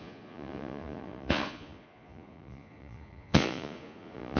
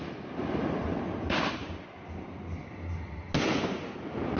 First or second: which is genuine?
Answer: second